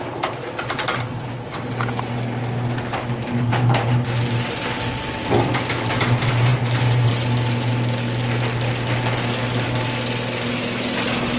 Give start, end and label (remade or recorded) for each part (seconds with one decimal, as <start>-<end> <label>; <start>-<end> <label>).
0.0-11.4 recorded